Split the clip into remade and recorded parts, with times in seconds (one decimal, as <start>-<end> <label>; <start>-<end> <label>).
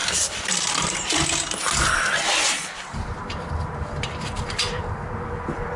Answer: 0.0-3.5 remade; 3.5-5.8 recorded